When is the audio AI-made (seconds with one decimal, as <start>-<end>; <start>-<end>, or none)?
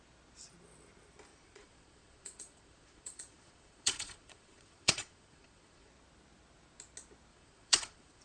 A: 1.3-5.9; 7.3-8.2